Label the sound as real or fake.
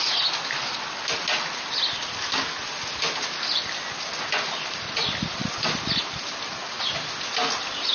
real